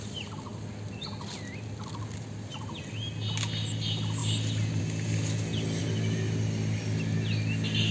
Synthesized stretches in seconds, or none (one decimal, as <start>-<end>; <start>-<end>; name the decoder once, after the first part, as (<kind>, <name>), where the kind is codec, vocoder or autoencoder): none